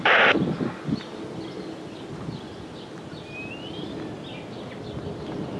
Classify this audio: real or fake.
real